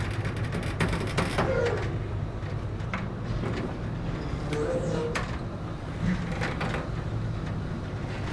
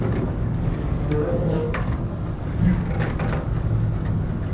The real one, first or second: first